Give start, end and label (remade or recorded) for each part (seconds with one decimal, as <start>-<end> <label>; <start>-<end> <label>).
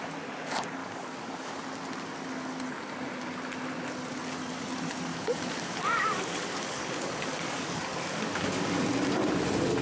0.0-0.8 recorded; 0.8-1.5 remade; 1.5-5.1 recorded; 5.1-8.8 remade; 8.8-9.8 recorded